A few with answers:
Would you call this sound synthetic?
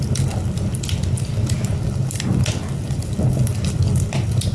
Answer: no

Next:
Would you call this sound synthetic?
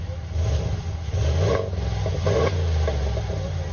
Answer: no